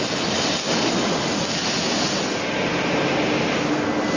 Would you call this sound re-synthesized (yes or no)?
no